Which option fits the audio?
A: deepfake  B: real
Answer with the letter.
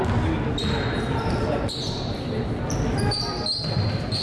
B